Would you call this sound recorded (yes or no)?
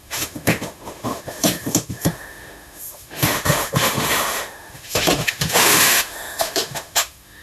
no